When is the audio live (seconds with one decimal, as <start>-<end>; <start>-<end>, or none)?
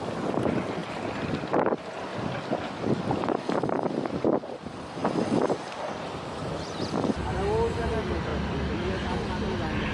0.0-0.8; 1.5-5.0; 7.1-8.3; 9.1-9.9